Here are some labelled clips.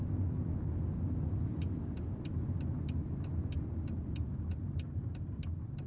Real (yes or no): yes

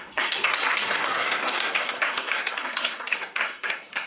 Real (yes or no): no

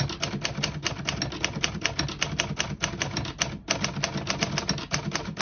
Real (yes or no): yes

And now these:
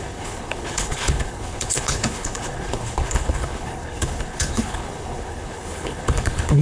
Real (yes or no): no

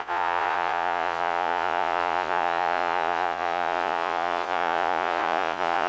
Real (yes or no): no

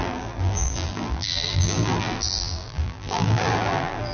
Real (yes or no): no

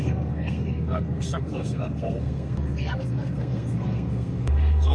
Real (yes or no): no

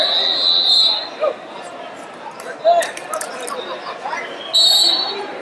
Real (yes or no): yes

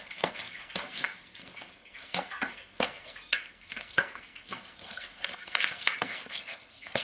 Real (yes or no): no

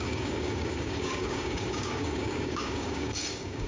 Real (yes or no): no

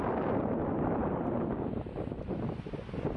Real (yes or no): yes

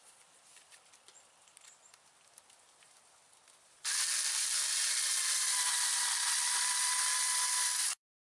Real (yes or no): no